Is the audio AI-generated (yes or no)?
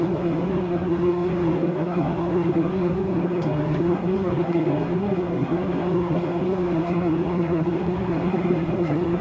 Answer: yes